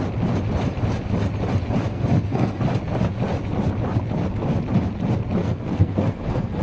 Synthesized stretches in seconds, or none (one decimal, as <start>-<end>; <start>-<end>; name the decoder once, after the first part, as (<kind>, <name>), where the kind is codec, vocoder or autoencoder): 1.9-2.6 (codec, SNAC); 5.4-6.6